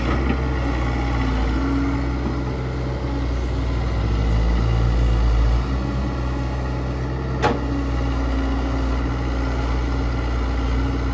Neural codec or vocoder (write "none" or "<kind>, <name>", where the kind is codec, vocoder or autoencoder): none